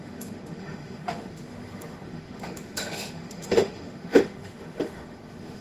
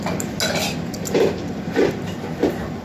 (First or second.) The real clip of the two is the second